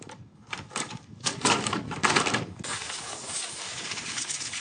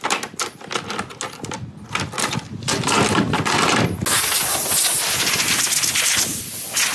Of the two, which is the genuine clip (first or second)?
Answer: second